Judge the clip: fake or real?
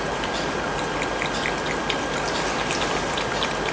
real